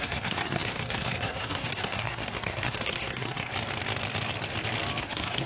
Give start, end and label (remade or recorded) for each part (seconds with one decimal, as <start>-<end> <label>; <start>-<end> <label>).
0.0-3.5 remade; 3.5-5.0 recorded; 5.0-5.5 remade